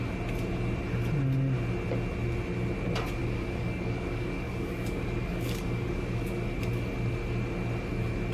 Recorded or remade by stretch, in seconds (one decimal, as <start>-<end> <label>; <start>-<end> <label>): 0.0-3.2 recorded; 3.2-6.6 remade; 6.6-8.3 recorded